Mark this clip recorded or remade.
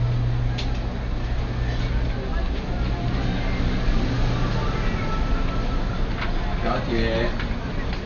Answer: recorded